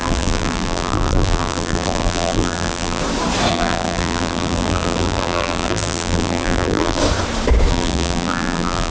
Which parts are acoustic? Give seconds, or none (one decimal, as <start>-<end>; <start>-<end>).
3.0-3.5; 7.0-7.7